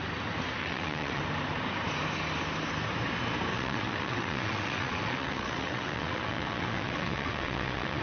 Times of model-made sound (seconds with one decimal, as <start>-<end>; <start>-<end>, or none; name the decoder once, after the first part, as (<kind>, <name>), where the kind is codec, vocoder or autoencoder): 0.6-1.2 (vocoder, WaveNeXt); 3.5-8.0